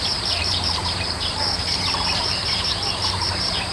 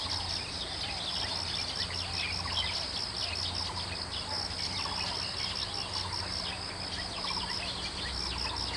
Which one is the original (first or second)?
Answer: second